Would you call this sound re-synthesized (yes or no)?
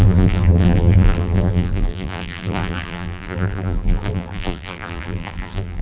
yes